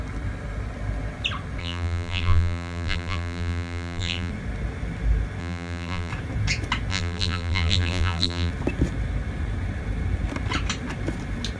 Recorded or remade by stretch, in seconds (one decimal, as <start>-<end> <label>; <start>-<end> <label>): 0.0-1.6 recorded; 1.6-4.3 remade; 4.3-5.4 recorded; 5.4-6.1 remade; 6.1-6.9 recorded; 6.9-8.5 remade; 8.5-11.6 recorded